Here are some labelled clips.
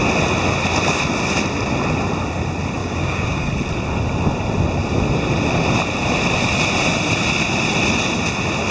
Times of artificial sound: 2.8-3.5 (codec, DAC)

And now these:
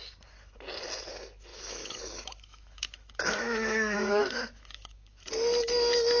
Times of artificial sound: 1.5-5.2 (autoencoder, DAC-VAE)

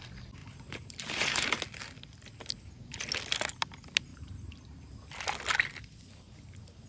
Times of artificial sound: 0.4-1.6 (vocoder, BigVGAN v2); 4.1-4.9

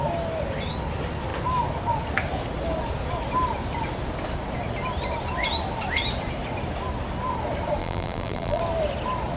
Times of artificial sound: 7.8-8.6 (vocoder, BigVGAN v2)

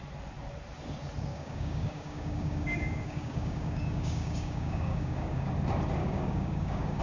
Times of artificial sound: 1.3-5.5 (codec, DAC); 6.0-7.0

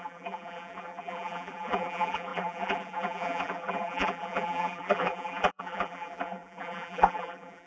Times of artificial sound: 0.0-7.7 (vocoder, BigVGAN v2)

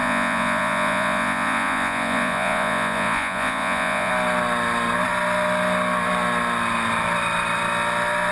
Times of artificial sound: 0.0-4.1 (vocoder, Vocos)